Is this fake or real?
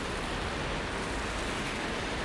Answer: real